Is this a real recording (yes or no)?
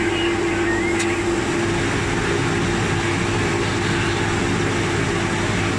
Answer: yes